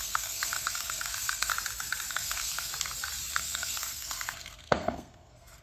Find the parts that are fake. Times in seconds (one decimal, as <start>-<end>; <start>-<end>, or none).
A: 0.0-1.5; 2.1-2.7; 3.3-5.6